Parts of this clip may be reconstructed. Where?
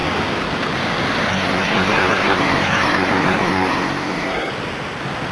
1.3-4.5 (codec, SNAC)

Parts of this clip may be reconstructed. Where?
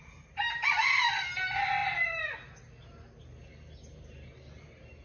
none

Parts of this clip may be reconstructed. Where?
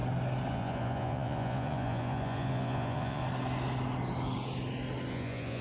0.5-3.2 (vocoder, Vocos); 5.1-5.6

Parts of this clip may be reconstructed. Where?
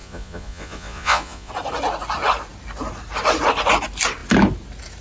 0.0-1.5 (vocoder, Vocos)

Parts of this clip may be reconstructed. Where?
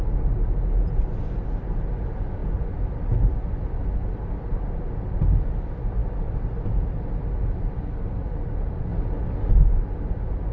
none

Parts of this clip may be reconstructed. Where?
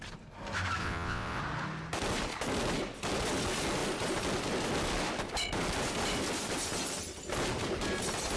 0.8-1.4 (vocoder, WaveNeXt)